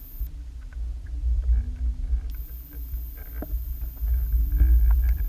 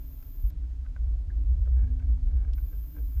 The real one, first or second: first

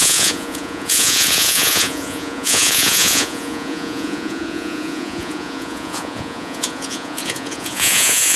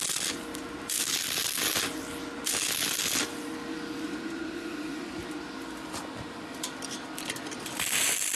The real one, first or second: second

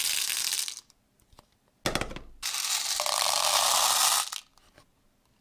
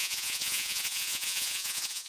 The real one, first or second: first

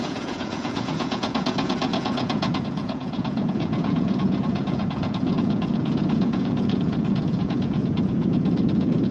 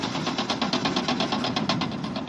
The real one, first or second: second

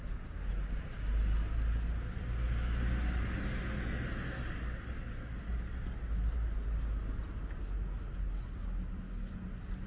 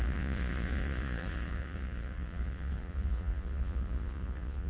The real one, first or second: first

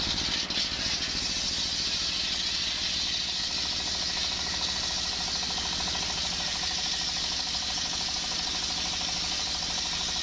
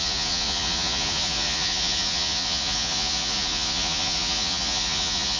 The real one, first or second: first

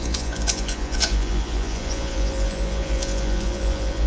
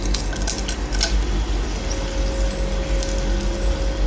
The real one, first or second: second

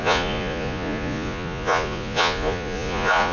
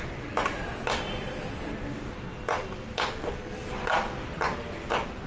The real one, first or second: second